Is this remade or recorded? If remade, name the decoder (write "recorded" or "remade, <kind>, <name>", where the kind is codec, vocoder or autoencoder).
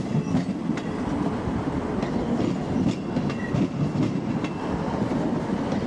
recorded